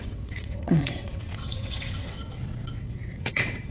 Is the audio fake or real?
fake